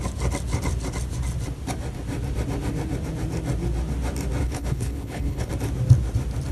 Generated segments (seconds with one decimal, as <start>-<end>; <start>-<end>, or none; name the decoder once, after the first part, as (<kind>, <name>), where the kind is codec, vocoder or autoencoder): 4.4-5.5 (codec, HILCodec)